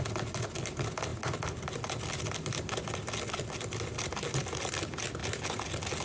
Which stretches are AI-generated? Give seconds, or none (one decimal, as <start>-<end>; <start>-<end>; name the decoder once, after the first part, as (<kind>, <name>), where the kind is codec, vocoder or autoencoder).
none